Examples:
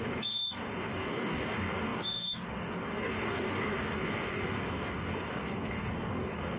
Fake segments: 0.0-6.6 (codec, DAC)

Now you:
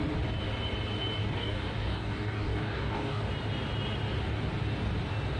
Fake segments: 1.2-3.3 (codec, DAC)

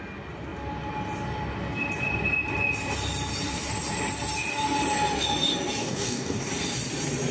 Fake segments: 5.8-6.5 (codec, DAC)

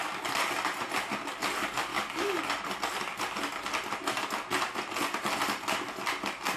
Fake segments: 1.9-2.4 (codec, DAC)

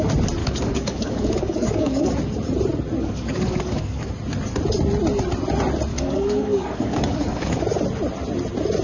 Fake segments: 0.4-2.1 (codec, DAC); 3.0-4.1; 5.9-7.6